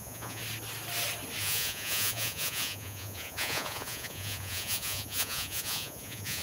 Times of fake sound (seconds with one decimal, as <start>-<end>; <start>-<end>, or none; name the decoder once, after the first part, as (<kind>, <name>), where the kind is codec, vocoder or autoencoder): 0.0-0.4 (vocoder, Vocos); 1.4-6.4